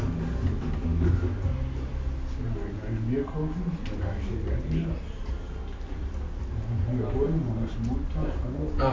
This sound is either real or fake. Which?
real